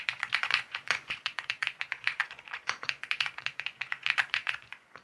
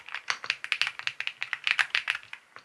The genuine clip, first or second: second